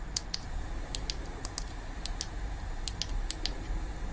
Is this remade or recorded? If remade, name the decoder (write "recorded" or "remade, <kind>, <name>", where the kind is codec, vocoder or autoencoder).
recorded